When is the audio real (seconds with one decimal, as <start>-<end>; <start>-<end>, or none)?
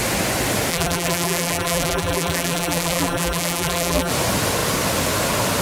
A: 0.0-0.7; 4.1-5.6